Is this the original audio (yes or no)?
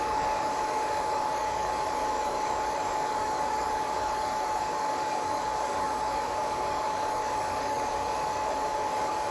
no